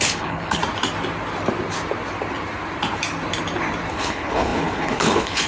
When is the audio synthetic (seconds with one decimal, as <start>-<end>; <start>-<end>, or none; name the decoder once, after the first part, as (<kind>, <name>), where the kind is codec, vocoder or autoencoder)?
0.0-0.6 (codec, HILCodec); 3.9-5.5